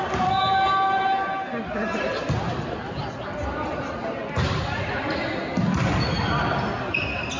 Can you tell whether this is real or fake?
real